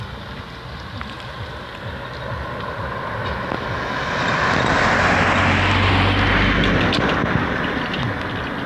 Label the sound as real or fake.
real